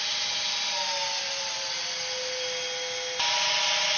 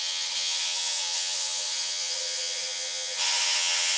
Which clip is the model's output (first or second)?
second